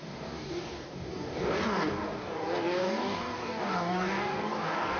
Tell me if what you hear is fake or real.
fake